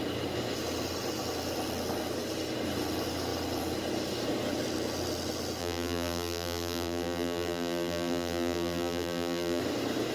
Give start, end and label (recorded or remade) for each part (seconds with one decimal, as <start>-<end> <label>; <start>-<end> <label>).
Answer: 0.0-5.6 recorded; 5.6-9.6 remade; 9.6-10.1 recorded